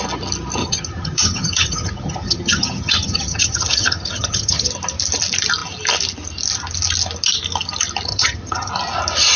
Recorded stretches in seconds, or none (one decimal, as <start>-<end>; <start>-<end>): 0.0-0.6; 4.7-8.1; 8.7-9.4